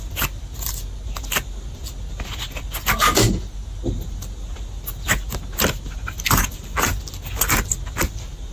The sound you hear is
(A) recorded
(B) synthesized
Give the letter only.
A